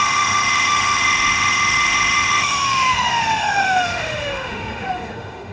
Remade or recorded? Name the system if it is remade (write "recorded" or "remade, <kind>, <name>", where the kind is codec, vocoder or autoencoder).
remade, autoencoder, DAC-VAE